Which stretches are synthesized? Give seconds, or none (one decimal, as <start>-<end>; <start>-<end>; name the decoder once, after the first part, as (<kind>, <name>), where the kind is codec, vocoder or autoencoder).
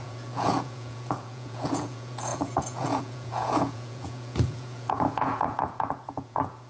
0.0-6.7 (vocoder, Vocos)